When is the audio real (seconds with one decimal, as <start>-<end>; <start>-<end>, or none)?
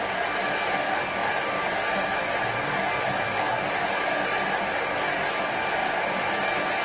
0.0-1.2; 5.0-5.8; 6.3-6.8